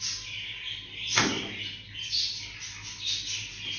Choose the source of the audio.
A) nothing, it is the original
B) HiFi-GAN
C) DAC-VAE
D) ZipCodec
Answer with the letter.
A